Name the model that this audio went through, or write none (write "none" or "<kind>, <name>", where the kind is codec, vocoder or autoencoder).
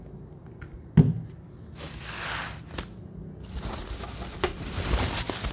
none